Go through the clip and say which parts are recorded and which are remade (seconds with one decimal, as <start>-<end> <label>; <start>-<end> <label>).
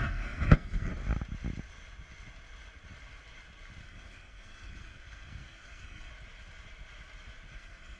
0.0-0.9 remade; 0.9-3.8 recorded; 3.8-6.1 remade; 6.1-7.5 recorded; 7.5-8.0 remade